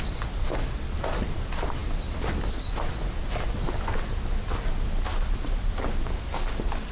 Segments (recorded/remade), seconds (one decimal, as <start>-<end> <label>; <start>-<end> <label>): 0.0-6.9 recorded